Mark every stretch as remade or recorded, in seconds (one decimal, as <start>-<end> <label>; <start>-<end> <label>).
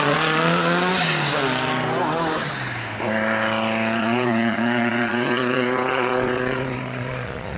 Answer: 0.0-0.9 remade; 0.9-4.0 recorded; 4.0-7.6 remade